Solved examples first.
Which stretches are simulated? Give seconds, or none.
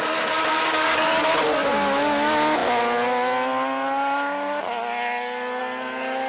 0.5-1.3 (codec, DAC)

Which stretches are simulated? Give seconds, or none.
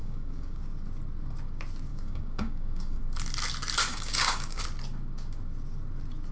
0.0-0.6 (codec, DAC); 1.9-3.0; 3.9-4.6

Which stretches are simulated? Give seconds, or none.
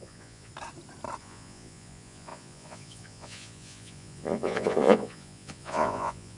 0.0-0.5 (vocoder, Vocos); 1.2-6.4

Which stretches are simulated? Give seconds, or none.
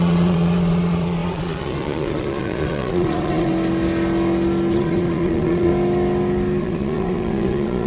0.0-3.5 (vocoder, Vocos); 4.7-5.7; 6.6-7.9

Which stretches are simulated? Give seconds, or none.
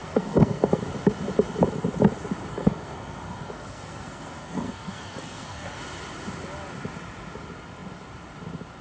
0.0-0.8 (codec, SNAC); 2.5-5.8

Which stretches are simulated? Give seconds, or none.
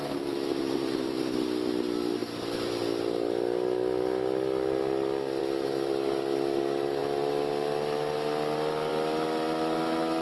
none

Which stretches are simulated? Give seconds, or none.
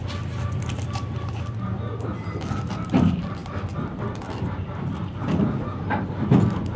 none